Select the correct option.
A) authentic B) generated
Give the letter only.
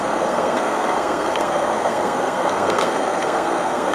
B